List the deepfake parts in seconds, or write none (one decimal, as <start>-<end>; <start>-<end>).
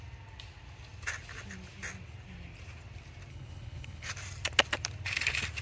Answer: 3.3-4.1